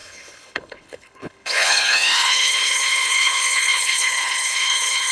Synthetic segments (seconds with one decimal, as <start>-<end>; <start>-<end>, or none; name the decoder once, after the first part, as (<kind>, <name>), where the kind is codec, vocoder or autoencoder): 0.0-5.1 (codec, HILCodec)